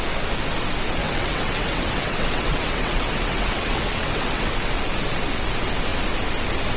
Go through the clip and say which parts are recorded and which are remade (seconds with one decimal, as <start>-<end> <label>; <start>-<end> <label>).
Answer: 0.0-1.0 recorded; 1.0-4.5 remade; 4.5-6.8 recorded